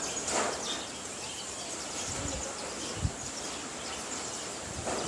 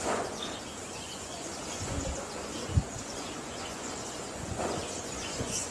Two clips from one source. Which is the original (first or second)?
first